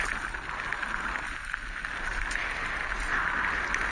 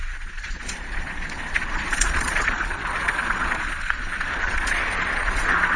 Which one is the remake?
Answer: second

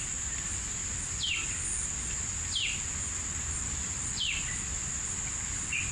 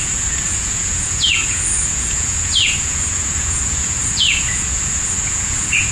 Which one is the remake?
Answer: second